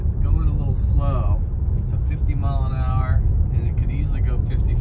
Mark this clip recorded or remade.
recorded